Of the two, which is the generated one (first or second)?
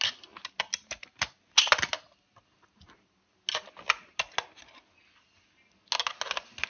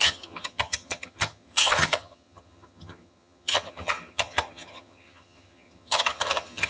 second